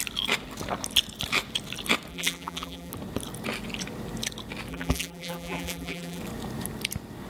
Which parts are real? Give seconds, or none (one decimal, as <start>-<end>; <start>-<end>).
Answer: 0.0-2.1; 2.9-4.7; 6.2-7.3